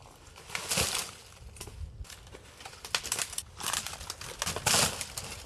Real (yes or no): yes